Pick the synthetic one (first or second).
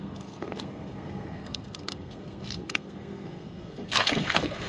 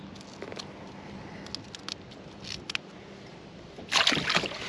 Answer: first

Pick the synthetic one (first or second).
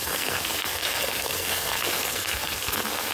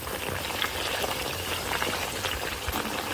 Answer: first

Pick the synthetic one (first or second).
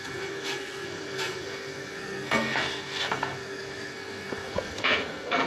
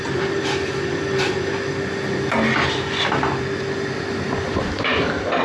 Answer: first